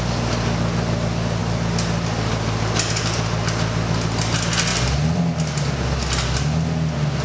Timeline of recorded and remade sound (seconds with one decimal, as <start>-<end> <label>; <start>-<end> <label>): 0.0-4.7 recorded; 4.7-5.2 remade; 5.2-7.2 recorded